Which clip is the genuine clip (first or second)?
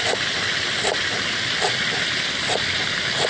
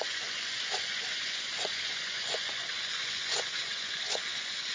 first